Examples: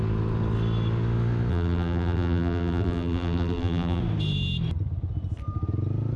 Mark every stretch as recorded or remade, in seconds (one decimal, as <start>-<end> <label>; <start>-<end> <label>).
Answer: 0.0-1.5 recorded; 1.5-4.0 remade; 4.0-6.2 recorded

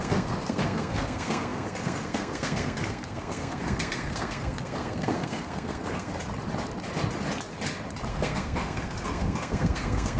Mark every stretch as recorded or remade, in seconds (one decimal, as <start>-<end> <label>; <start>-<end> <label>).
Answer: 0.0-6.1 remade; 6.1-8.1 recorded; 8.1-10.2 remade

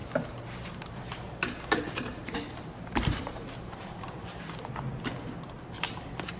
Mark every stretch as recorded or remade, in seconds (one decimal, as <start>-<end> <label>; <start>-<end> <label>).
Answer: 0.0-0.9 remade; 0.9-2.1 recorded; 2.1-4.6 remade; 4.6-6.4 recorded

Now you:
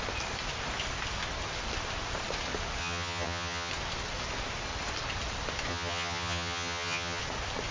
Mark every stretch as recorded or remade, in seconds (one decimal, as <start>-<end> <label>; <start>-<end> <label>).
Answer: 0.0-2.8 recorded; 2.8-3.7 remade; 3.7-5.7 recorded; 5.7-7.2 remade; 7.2-7.7 recorded

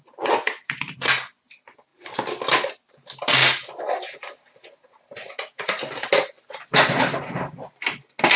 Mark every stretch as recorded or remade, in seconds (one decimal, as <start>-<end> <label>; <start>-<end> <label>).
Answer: 0.0-8.4 recorded

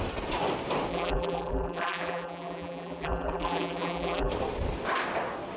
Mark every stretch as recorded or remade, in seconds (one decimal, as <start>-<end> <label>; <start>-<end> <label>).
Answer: 0.0-0.9 recorded; 0.9-4.3 remade; 4.3-5.6 recorded

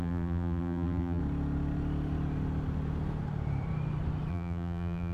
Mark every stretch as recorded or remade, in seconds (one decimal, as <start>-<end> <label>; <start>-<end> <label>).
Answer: 0.0-1.2 remade; 1.2-4.3 recorded; 4.3-5.1 remade

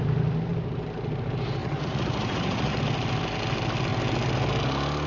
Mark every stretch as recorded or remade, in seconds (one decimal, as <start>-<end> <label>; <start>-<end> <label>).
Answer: 0.0-1.6 recorded; 1.6-2.8 remade; 2.8-5.1 recorded